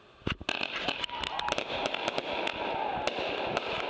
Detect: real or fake real